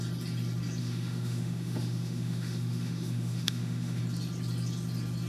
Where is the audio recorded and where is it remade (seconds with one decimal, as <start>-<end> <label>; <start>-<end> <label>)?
0.0-0.8 recorded; 0.8-4.0 remade; 4.0-5.3 recorded